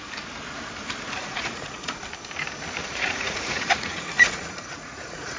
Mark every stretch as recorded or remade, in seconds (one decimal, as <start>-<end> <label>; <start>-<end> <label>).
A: 0.0-1.2 recorded; 1.2-2.0 remade; 2.0-2.8 recorded; 2.8-5.4 remade